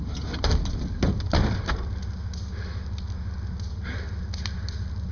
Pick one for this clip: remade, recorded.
recorded